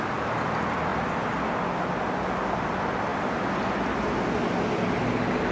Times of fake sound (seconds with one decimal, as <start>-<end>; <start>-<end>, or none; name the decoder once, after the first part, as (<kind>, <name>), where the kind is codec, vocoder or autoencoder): none